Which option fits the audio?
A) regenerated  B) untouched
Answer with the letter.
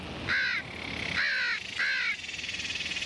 B